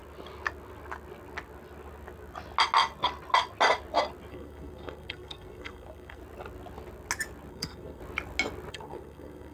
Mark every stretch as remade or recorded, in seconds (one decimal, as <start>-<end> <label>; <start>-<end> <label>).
0.0-4.3 recorded; 4.3-6.2 remade; 6.2-7.5 recorded; 7.5-8.0 remade; 8.0-8.7 recorded; 8.7-9.5 remade